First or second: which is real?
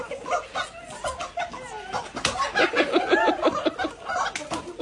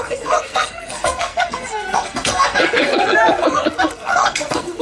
first